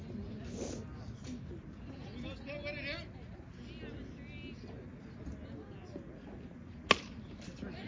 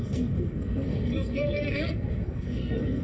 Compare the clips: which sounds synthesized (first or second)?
second